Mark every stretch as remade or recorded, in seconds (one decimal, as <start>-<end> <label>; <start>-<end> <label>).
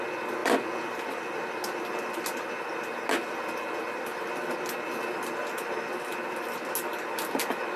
0.0-7.8 recorded